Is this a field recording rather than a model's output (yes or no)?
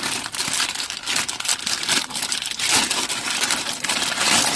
yes